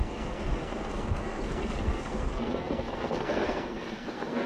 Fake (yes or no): yes